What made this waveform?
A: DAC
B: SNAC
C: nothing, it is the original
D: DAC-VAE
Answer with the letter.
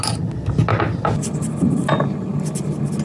C